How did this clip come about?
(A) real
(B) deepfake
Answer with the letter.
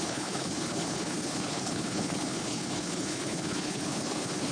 B